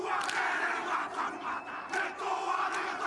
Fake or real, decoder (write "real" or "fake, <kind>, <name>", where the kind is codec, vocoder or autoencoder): real